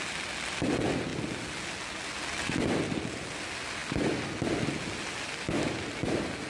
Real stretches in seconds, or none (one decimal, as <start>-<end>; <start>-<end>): 0.0-6.5